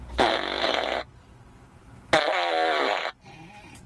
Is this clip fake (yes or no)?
no